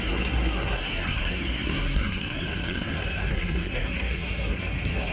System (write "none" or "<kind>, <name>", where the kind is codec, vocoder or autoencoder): codec, SNAC